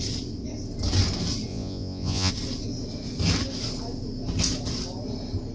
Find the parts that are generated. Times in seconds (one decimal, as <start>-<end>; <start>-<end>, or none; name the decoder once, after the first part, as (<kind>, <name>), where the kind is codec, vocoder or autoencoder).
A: 1.5-2.3 (vocoder, Vocos)